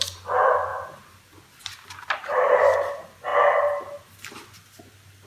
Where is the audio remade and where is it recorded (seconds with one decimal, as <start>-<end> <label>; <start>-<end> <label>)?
0.0-5.3 recorded